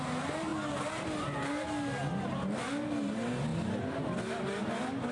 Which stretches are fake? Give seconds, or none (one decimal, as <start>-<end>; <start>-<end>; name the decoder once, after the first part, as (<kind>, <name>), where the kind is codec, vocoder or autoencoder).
none